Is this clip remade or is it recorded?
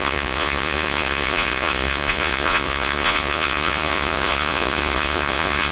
remade